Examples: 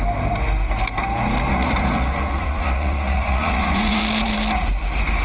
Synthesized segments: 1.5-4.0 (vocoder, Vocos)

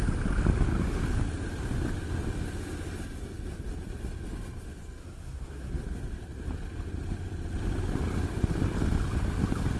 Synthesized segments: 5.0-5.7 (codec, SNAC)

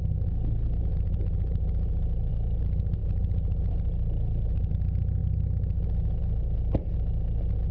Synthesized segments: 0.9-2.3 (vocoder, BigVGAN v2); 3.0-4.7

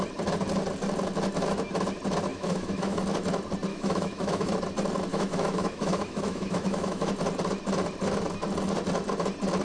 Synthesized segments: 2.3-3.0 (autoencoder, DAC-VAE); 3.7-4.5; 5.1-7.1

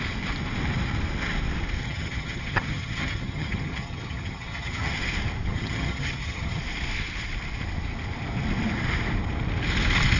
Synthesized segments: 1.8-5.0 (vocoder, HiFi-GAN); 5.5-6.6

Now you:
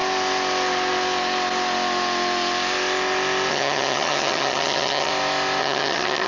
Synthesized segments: 3.5-5.1 (vocoder, HiFi-GAN); 5.6-6.3

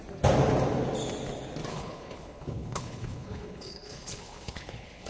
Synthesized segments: 1.7-5.1 (codec, HILCodec)

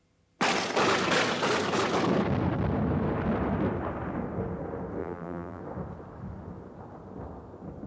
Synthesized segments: 5.0-5.6 (vocoder, BigVGAN v2)